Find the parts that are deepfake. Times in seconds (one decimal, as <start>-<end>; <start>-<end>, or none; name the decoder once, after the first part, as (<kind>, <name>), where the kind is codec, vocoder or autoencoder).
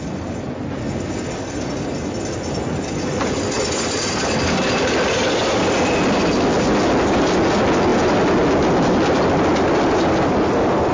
none